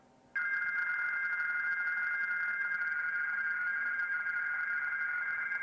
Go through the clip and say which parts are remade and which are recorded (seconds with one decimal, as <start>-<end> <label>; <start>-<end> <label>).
0.0-5.6 recorded